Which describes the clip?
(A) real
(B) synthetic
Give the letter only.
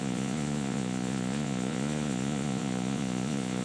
B